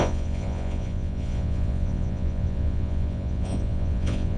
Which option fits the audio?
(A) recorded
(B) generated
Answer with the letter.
B